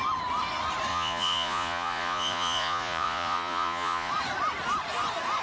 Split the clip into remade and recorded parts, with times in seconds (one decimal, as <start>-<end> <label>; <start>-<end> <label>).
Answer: 0.0-0.9 recorded; 0.9-4.1 remade; 4.1-5.4 recorded